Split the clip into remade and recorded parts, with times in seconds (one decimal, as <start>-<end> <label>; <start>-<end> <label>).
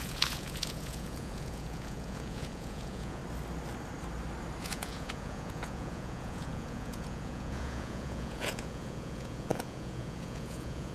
0.0-3.2 remade; 3.2-4.6 recorded; 4.6-10.9 remade